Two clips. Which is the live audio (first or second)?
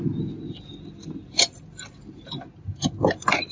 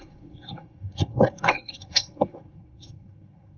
first